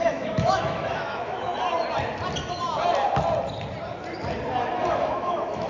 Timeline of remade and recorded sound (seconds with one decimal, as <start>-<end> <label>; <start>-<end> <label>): 0.0-1.5 remade; 1.5-4.9 recorded; 4.9-5.7 remade